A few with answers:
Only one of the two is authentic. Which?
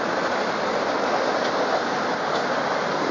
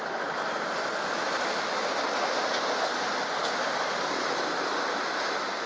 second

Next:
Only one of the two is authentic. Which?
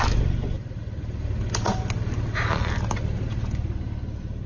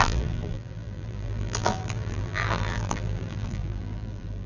first